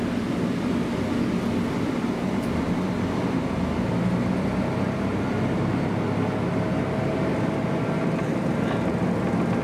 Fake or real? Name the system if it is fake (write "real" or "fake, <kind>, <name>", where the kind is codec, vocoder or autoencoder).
real